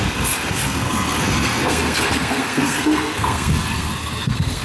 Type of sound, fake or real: fake